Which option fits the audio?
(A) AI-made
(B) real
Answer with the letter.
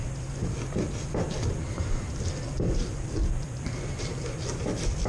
B